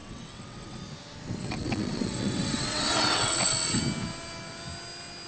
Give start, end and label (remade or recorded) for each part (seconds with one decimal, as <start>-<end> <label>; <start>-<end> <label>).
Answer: 0.0-0.8 remade; 0.8-1.4 recorded; 1.4-3.8 remade; 3.8-5.3 recorded